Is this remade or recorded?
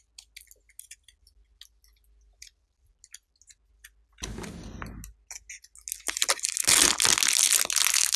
recorded